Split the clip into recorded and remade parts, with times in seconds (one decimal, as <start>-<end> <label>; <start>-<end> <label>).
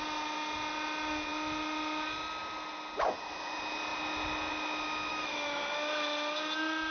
0.0-5.1 recorded; 5.1-5.6 remade; 5.6-6.9 recorded